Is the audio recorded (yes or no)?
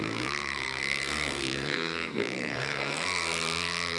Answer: no